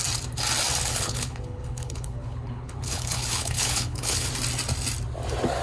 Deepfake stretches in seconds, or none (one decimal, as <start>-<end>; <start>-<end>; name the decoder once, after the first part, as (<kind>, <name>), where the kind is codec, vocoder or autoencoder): 0.9-4.3 (codec, HILCodec)